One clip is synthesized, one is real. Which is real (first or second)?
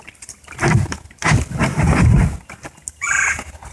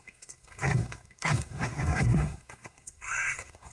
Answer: first